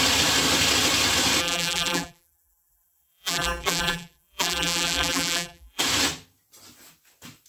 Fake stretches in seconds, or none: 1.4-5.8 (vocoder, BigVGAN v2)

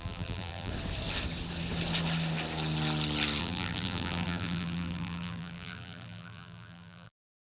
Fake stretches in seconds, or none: 0.0-0.7 (vocoder, BigVGAN v2); 3.4-7.6

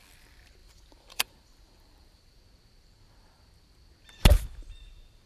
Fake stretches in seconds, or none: 0.6-2.4 (vocoder, BigVGAN v2)

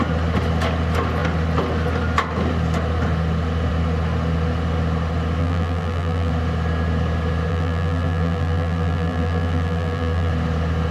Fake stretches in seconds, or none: 5.4-6.3 (vocoder, BigVGAN v2); 7.5-10.3

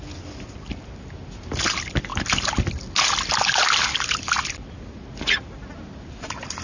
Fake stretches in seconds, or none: none

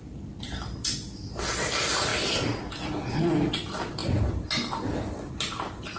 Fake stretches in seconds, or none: 0.0-2.1 (vocoder, BigVGAN v2); 2.7-6.0